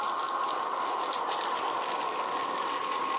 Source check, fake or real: real